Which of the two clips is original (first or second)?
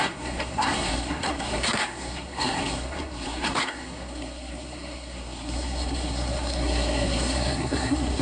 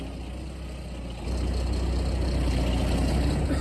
second